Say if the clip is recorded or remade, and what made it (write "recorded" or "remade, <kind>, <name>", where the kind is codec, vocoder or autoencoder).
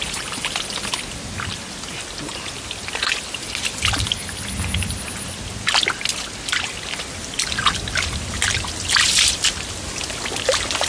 recorded